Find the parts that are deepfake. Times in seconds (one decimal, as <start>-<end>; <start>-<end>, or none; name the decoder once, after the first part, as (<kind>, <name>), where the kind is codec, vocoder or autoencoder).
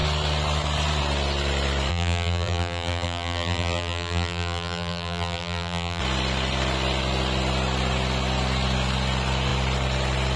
1.9-6.0 (vocoder, BigVGAN v2)